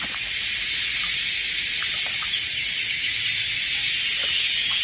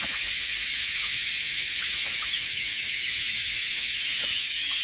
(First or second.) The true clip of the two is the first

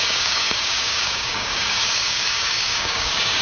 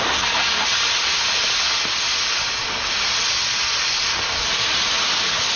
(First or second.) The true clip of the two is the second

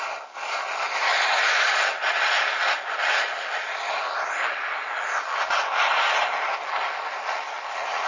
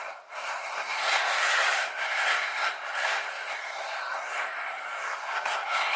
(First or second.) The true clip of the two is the first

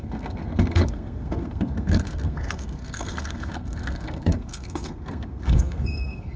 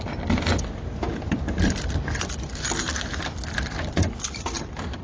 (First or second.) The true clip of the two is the second